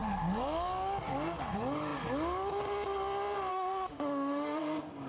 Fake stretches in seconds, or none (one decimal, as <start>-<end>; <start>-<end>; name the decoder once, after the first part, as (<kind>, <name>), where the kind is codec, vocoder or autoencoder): 3.5-4.6 (autoencoder, DAC-VAE)